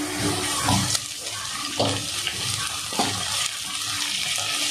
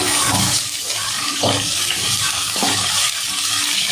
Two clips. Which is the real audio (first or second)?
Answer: first